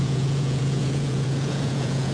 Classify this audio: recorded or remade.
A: remade